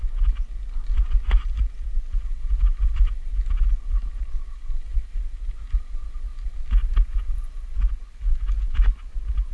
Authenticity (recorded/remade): recorded